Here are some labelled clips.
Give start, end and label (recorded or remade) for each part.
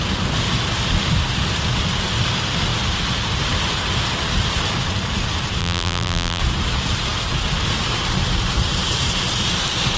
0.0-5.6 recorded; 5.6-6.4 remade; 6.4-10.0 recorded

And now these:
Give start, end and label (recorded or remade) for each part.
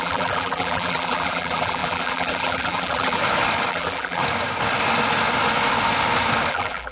0.0-3.2 remade; 3.2-3.7 recorded; 3.7-4.2 remade; 4.2-6.5 recorded; 6.5-6.9 remade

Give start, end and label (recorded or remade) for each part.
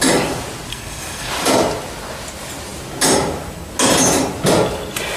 0.0-0.7 recorded; 0.7-1.3 remade; 1.3-5.2 recorded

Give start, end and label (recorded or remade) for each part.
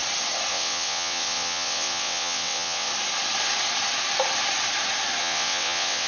0.0-0.5 recorded; 0.5-2.9 remade; 2.9-5.2 recorded; 5.2-6.1 remade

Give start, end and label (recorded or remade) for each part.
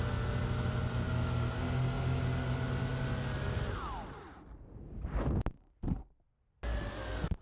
0.0-7.4 recorded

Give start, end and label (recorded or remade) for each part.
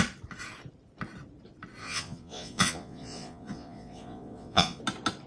0.0-1.8 recorded; 1.8-4.8 remade; 4.8-5.3 recorded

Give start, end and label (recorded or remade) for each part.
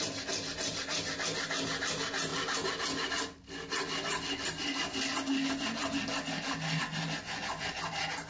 0.0-8.3 recorded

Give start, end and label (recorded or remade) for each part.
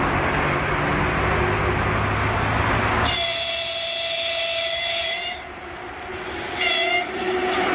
0.0-5.0 recorded; 5.0-5.9 remade; 5.9-7.7 recorded